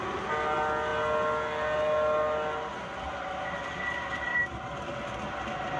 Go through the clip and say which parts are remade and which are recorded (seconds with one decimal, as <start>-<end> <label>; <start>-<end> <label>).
0.0-5.8 recorded